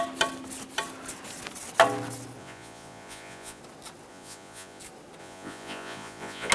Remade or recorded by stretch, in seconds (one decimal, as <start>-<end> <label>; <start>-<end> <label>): 0.0-2.4 recorded; 2.4-3.6 remade; 3.6-4.1 recorded; 4.1-4.8 remade; 4.8-5.2 recorded; 5.2-6.5 remade